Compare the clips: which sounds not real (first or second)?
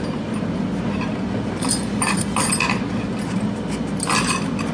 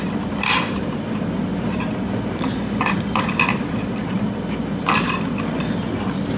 second